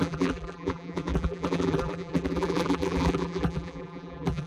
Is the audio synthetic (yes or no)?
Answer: yes